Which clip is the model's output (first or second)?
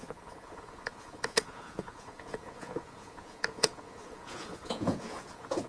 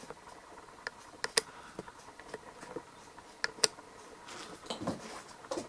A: first